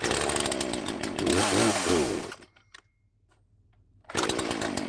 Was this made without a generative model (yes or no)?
yes